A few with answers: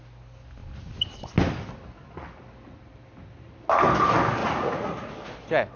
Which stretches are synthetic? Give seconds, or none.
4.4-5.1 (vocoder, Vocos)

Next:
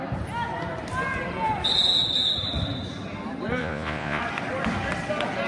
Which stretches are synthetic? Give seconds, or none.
3.6-4.2 (vocoder, Vocos)

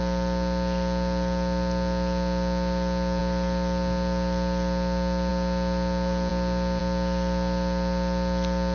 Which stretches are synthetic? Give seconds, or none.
none

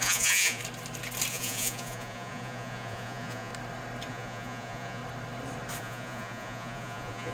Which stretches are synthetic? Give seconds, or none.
0.0-0.6 (vocoder, Vocos); 1.3-3.5; 4.1-5.0; 5.8-7.3